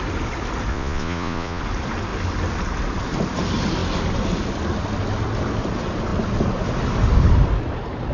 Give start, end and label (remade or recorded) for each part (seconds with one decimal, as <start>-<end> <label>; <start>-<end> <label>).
0.0-0.7 recorded; 0.7-1.6 remade; 1.6-8.1 recorded